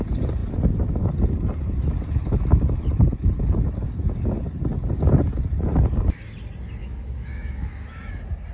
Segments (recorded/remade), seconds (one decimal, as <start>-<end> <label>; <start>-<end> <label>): 0.0-6.8 recorded; 6.8-8.1 remade; 8.1-8.5 recorded